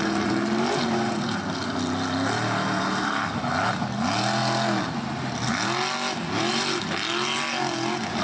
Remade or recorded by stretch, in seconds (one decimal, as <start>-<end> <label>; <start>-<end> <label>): 0.0-8.2 recorded